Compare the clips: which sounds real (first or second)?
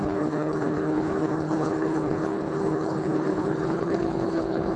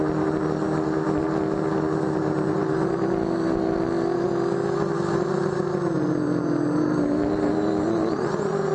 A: second